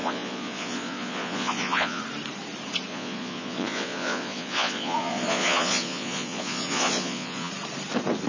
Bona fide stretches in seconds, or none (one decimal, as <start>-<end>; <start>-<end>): 2.0-2.9; 7.5-8.3